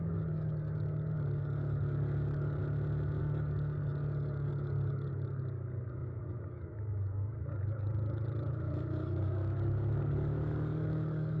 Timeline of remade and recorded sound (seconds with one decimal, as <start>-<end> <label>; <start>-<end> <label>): 0.0-2.6 remade; 2.6-3.2 recorded; 3.2-11.4 remade